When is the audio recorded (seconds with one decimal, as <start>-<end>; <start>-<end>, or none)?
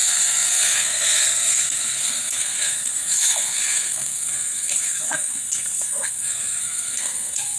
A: none